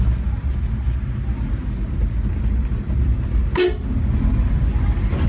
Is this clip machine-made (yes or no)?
no